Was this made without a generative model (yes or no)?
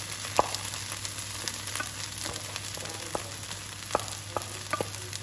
yes